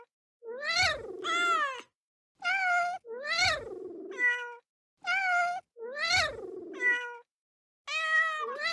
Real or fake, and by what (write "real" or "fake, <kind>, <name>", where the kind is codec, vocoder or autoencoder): real